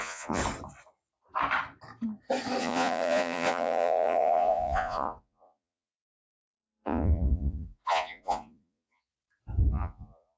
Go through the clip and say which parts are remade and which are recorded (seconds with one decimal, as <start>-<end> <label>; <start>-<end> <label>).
0.0-0.4 remade; 0.4-2.6 recorded; 2.6-9.1 remade; 9.1-9.7 recorded; 9.7-10.4 remade